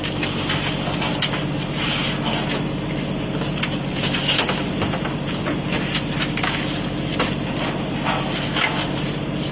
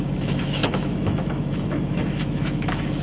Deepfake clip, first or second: second